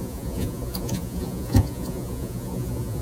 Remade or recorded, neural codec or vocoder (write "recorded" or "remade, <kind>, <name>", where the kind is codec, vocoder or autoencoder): remade, vocoder, Vocos